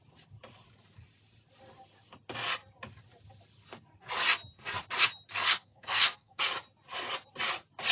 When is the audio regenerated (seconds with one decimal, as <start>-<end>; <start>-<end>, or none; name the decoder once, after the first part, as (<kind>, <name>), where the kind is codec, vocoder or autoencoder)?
5.3-6.4 (codec, SNAC)